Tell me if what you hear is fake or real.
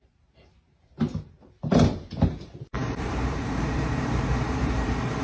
fake